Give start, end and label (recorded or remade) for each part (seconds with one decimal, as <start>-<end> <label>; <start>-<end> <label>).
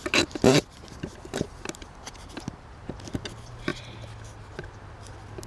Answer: 0.0-5.5 recorded